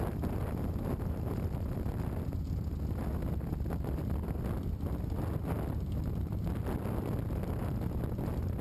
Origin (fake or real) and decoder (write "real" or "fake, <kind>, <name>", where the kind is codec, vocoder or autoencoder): real